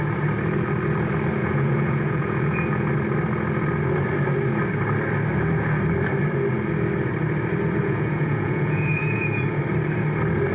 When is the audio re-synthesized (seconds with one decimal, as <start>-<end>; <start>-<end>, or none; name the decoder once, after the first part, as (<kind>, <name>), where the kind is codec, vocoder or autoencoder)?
1.4-2.9 (vocoder, Vocos); 7.8-9.6

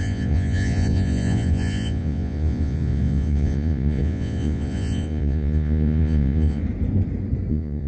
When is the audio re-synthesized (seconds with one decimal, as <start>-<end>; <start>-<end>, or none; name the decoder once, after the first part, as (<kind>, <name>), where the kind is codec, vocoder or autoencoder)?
0.0-6.6 (vocoder, Vocos); 7.5-7.9

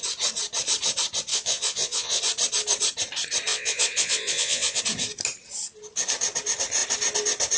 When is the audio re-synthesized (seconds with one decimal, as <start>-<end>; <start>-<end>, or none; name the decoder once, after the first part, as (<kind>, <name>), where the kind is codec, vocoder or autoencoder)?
1.3-2.2 (vocoder, Vocos); 3.5-4.8